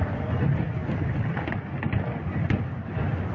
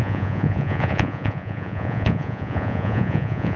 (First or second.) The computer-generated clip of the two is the second